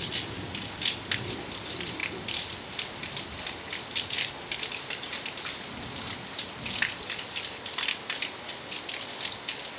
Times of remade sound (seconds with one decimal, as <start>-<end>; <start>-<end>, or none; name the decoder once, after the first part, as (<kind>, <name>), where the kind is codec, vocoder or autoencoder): none